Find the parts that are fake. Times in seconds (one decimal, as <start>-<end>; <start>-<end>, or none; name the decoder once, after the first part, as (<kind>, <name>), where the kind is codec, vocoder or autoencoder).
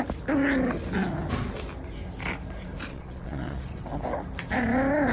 2.9-3.6 (vocoder, Vocos)